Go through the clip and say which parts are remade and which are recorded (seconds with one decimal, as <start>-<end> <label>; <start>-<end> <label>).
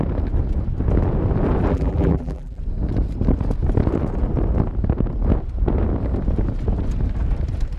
0.0-1.7 recorded; 1.7-2.6 remade; 2.6-7.8 recorded